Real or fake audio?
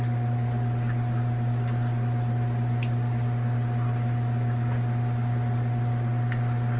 real